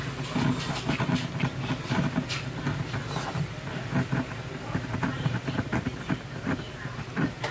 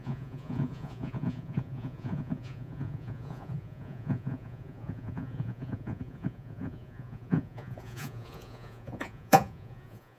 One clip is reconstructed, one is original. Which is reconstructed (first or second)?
second